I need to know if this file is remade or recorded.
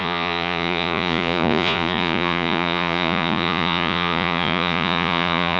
remade